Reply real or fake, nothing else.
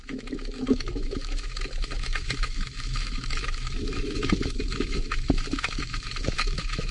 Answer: fake